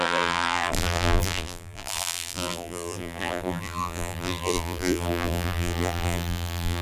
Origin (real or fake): fake